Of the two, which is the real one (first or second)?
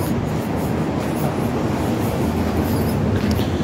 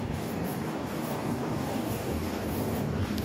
first